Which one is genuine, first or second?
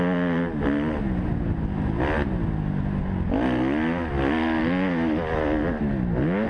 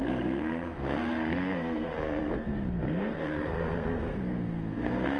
first